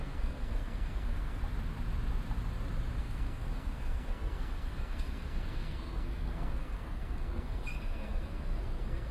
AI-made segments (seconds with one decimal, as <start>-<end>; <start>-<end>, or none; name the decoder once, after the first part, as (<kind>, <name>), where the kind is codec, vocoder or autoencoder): 0.0-1.4 (codec, SNAC); 3.0-9.1